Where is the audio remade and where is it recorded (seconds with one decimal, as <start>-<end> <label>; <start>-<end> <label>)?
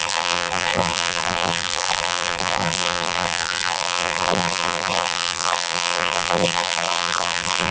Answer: 0.0-7.7 remade